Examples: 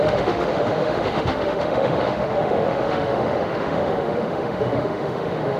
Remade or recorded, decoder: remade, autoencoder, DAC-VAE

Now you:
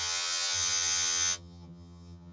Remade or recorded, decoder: remade, vocoder, HiFi-GAN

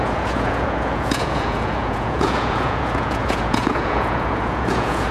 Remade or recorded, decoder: remade, vocoder, Vocos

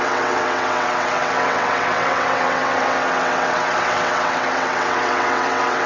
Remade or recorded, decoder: remade, vocoder, WaveNeXt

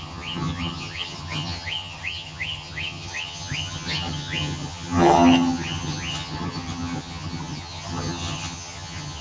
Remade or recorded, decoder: remade, vocoder, HiFi-GAN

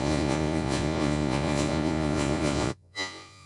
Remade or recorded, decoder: remade, vocoder, Vocos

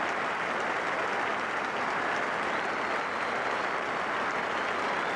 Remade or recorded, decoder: recorded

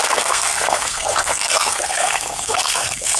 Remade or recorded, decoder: remade, codec, SNAC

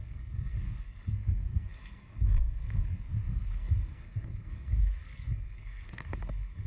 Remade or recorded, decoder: remade, codec, SNAC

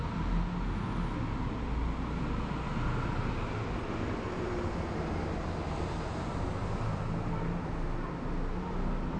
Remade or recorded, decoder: recorded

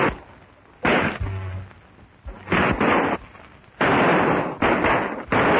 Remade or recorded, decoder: recorded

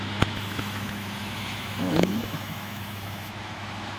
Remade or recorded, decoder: remade, autoencoder, DAC-VAE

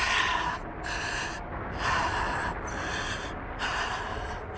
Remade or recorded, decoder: recorded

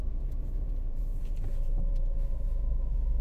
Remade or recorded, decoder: remade, vocoder, Vocos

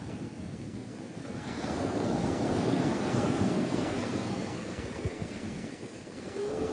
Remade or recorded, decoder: remade, codec, SNAC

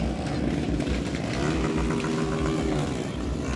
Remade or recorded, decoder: recorded